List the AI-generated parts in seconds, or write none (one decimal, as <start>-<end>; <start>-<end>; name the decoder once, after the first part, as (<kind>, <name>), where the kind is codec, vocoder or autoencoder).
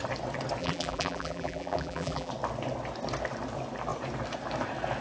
0.6-2.3 (vocoder, BigVGAN v2)